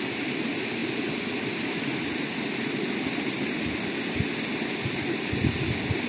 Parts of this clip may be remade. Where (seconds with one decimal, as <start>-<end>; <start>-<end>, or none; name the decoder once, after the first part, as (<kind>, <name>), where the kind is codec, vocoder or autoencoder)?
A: none